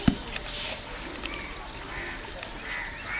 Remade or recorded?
recorded